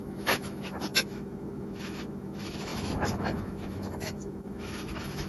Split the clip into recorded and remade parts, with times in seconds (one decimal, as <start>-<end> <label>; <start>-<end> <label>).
0.0-5.3 remade

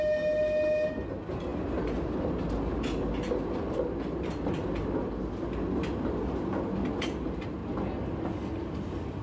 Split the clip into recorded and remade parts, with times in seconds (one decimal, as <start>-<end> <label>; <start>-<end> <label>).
0.0-9.2 recorded

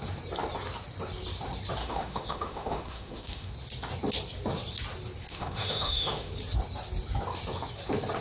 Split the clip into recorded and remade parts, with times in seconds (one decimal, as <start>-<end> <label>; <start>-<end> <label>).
0.0-1.8 recorded; 1.8-3.5 remade; 3.5-5.3 recorded; 5.3-6.3 remade; 6.3-8.2 recorded